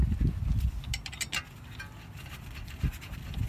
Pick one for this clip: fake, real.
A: real